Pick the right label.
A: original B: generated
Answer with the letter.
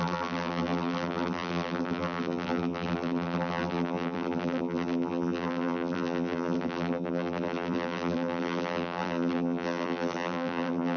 B